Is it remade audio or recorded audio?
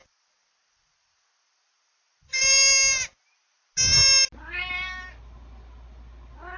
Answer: recorded